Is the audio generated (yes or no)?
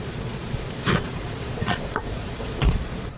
yes